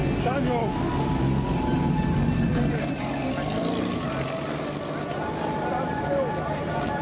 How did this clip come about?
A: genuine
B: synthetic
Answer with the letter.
A